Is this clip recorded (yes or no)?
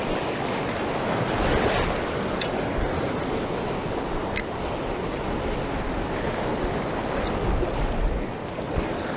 yes